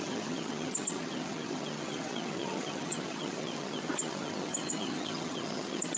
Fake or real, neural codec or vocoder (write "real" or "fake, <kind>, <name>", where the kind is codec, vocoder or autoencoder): fake, vocoder, HiFi-GAN